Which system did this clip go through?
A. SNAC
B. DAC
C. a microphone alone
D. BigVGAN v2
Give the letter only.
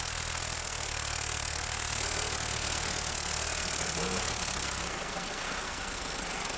A